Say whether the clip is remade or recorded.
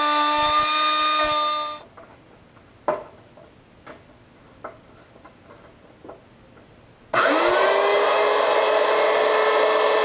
recorded